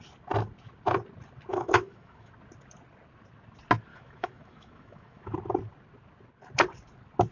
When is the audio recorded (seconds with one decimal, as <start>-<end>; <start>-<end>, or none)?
0.0-1.5; 2.3-3.9; 5.3-7.3